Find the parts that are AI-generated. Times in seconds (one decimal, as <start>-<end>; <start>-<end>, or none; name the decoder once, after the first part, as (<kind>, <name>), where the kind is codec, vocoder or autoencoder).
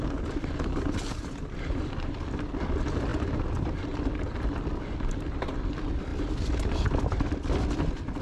none